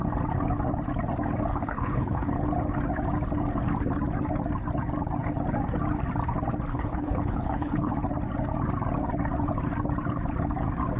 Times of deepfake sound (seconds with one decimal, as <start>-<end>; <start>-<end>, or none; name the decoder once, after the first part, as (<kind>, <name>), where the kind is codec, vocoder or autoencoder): 1.5-2.3 (codec, HILCodec); 6.7-7.9